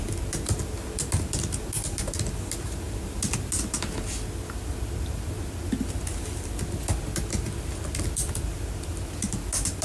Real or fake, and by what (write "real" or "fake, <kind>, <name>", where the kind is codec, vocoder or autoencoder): real